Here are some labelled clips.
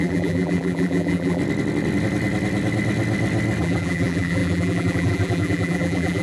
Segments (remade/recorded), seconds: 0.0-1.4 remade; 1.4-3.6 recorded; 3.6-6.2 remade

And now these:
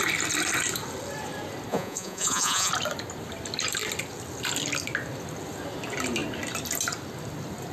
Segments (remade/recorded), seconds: 0.0-1.7 recorded; 1.7-2.7 remade; 2.7-7.7 recorded

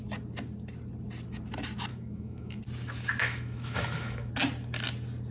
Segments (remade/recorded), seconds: 0.0-1.9 recorded; 1.9-2.6 remade; 2.6-3.2 recorded; 3.2-4.3 remade; 4.3-5.3 recorded

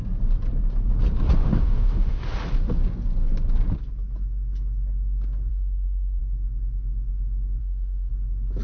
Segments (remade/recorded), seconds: 0.0-1.4 recorded; 1.4-2.2 remade; 2.2-5.5 recorded; 5.5-6.2 remade; 6.2-7.6 recorded; 7.6-8.1 remade; 8.1-8.6 recorded

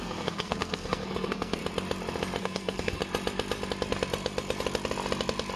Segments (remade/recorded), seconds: 0.0-1.6 remade; 1.6-2.4 recorded; 2.4-3.0 remade; 3.0-5.6 recorded

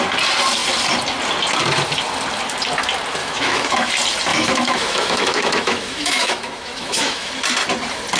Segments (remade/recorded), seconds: 0.0-3.2 recorded; 3.2-3.9 remade; 3.9-4.3 recorded; 4.3-7.3 remade; 7.3-8.2 recorded

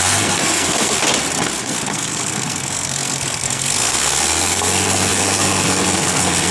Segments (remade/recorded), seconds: 0.0-1.0 remade; 1.0-1.6 recorded; 1.6-6.5 remade